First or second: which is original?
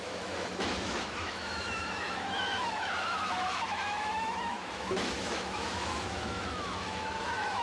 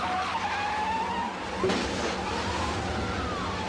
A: second